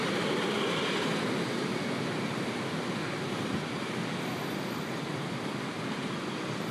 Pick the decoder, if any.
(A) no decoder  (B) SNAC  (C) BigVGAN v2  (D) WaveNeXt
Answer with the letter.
C